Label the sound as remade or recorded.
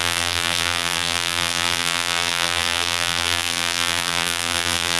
remade